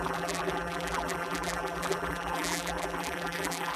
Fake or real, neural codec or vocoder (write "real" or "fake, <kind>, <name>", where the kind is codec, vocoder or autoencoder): fake, vocoder, BigVGAN v2